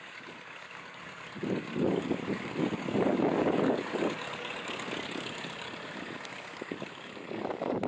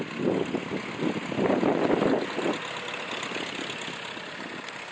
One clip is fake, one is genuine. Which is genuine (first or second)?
second